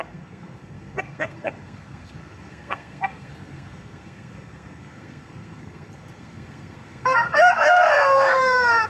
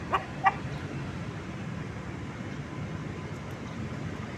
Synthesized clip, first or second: first